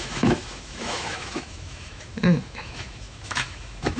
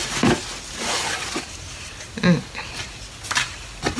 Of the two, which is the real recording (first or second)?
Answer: second